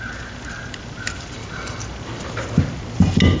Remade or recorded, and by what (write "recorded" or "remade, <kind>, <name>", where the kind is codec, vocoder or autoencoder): recorded